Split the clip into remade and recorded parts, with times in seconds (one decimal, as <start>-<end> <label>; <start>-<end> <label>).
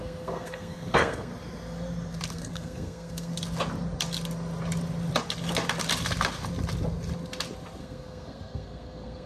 0.0-1.3 remade; 1.3-2.3 recorded; 2.3-3.3 remade; 3.3-7.8 recorded; 7.8-9.3 remade